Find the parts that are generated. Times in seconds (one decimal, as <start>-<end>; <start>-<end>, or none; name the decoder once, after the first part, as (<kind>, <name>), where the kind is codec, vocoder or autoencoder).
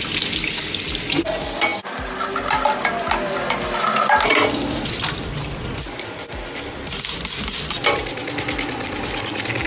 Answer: none